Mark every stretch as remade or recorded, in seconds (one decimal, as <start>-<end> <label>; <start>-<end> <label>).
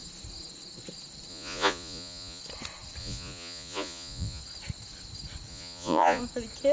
0.0-1.3 recorded; 1.3-2.4 remade; 2.4-3.0 recorded; 3.0-4.4 remade; 4.4-5.5 recorded; 5.5-6.2 remade; 6.2-6.7 recorded